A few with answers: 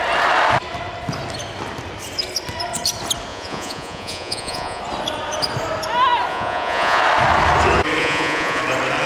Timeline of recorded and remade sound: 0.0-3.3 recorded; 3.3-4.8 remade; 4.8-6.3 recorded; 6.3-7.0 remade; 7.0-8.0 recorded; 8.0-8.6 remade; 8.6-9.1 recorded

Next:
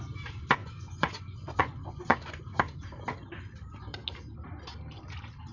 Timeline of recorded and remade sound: 0.0-0.6 recorded; 0.6-2.4 remade; 2.4-5.5 recorded

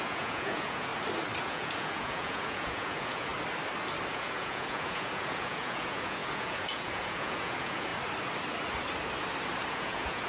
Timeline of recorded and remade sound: 0.0-0.9 remade; 0.9-1.4 recorded; 1.4-3.3 remade; 3.3-4.1 recorded; 4.1-7.9 remade; 7.9-9.7 recorded; 9.7-10.3 remade